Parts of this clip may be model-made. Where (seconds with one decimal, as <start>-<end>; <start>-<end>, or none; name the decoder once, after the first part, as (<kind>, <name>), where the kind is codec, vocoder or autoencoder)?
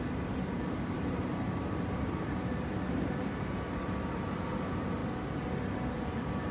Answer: 0.0-5.0 (vocoder, BigVGAN v2); 6.0-6.5